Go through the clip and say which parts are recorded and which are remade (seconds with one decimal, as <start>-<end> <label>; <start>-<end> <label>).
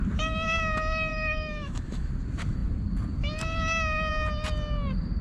0.0-1.1 recorded; 1.1-2.1 remade; 2.1-5.2 recorded